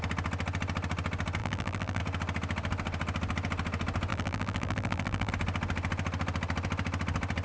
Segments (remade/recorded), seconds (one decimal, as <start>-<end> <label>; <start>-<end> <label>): 0.0-1.4 recorded; 1.4-2.0 remade; 2.0-4.1 recorded; 4.1-5.3 remade; 5.3-7.4 recorded